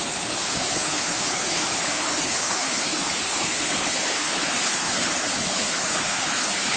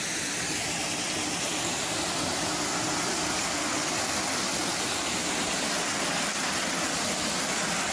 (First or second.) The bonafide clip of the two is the second